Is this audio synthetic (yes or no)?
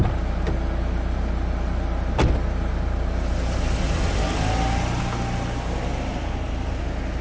no